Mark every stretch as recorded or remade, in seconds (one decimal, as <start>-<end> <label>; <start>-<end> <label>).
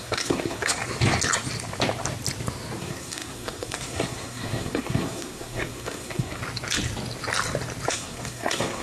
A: 0.0-0.8 remade; 0.8-2.8 recorded; 2.8-6.4 remade; 6.4-7.9 recorded; 7.9-8.8 remade